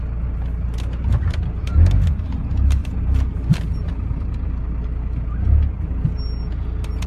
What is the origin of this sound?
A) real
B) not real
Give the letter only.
A